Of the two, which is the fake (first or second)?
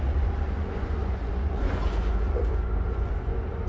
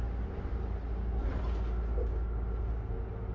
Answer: first